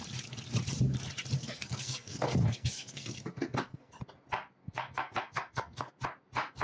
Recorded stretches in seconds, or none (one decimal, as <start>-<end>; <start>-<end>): 0.0-1.4; 4.0-4.6; 5.9-6.6